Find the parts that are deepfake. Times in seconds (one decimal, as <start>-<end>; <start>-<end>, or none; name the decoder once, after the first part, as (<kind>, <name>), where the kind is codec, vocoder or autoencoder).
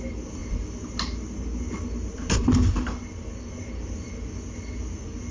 0.0-0.4 (vocoder, BigVGAN v2); 3.6-5.3